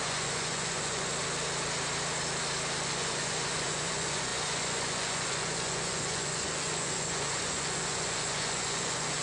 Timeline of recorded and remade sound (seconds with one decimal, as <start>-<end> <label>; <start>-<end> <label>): 0.0-1.1 remade; 1.1-2.8 recorded; 2.8-9.2 remade